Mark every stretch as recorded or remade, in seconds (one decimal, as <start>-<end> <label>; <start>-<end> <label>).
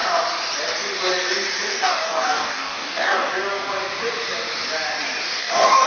0.0-1.7 recorded; 1.7-3.3 remade; 3.3-5.4 recorded; 5.4-5.9 remade